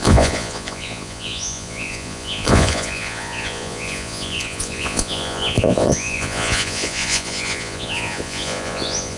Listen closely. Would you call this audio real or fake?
fake